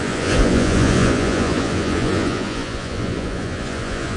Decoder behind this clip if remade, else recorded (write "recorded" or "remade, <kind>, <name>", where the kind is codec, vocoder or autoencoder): remade, vocoder, Vocos